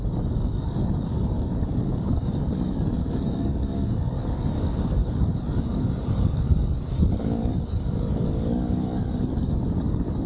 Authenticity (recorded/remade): remade